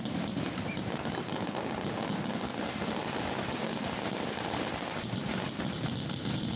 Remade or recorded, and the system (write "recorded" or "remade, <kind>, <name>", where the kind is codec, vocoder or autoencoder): recorded